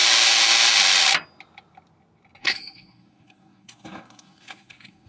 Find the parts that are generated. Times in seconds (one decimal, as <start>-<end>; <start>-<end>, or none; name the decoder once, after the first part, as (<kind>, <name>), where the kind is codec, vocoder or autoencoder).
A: 2.4-5.1 (codec, SNAC)